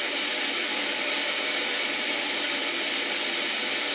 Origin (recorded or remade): recorded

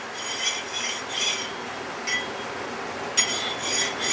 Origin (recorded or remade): recorded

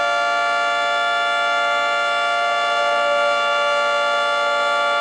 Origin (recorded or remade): recorded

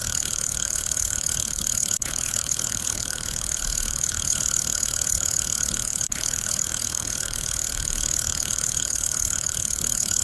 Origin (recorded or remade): remade